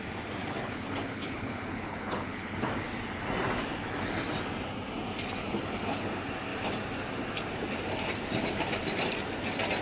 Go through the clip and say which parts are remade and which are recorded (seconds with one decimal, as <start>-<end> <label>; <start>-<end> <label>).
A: 0.0-0.4 recorded; 0.4-2.7 remade; 2.7-5.4 recorded; 5.4-6.0 remade; 6.0-9.8 recorded